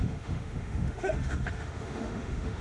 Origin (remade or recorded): remade